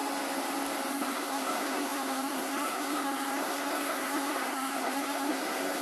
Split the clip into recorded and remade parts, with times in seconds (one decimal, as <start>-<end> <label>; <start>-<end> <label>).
0.0-0.9 recorded; 0.9-5.8 remade